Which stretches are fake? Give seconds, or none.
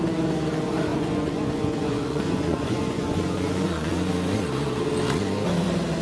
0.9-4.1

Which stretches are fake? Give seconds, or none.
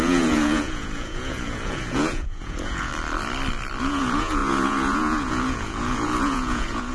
0.0-2.9; 3.8-6.9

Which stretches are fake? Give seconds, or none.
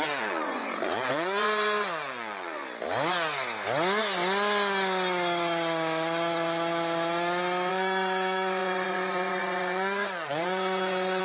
0.0-2.6; 7.7-11.2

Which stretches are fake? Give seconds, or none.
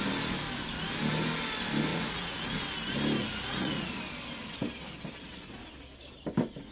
1.9-2.6; 3.2-4.0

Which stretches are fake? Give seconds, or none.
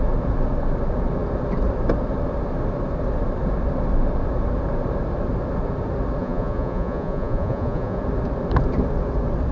6.2-8.0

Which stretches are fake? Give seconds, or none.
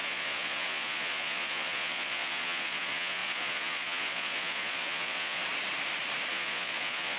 0.0-5.4; 6.3-7.2